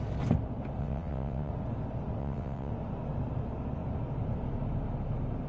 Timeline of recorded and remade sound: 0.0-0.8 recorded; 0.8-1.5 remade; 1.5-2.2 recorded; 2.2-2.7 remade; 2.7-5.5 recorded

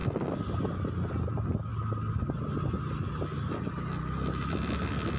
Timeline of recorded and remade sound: 0.0-5.2 recorded

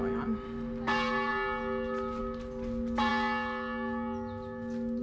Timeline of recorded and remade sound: 0.0-5.0 recorded

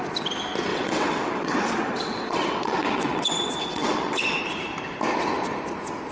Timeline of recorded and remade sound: 0.0-0.7 recorded; 0.7-4.4 remade; 4.4-6.1 recorded

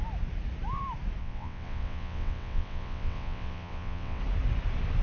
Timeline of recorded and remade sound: 0.0-1.2 recorded; 1.2-4.2 remade; 4.2-5.0 recorded

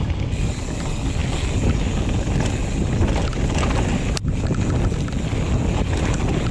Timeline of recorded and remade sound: 0.0-6.5 recorded

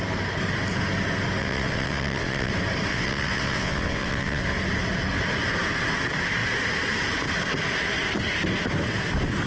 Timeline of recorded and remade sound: 0.0-1.4 recorded; 1.4-2.5 remade; 2.5-2.9 recorded; 2.9-4.4 remade; 4.4-9.5 recorded

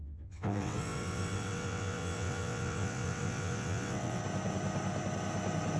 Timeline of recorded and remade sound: 0.0-4.2 remade; 4.2-5.8 recorded